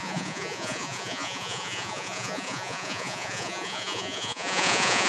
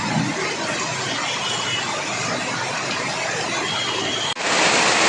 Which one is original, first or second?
second